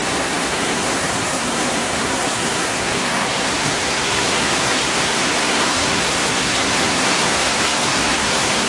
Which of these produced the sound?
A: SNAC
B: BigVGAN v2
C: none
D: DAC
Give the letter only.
A